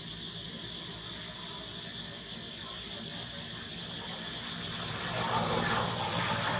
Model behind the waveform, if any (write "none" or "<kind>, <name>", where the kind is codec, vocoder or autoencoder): none